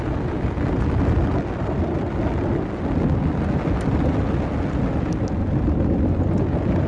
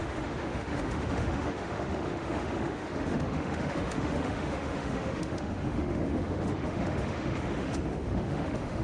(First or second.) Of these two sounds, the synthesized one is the second